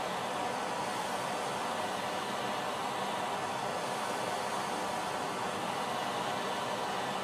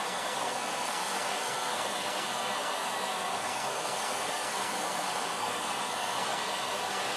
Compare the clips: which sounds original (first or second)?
first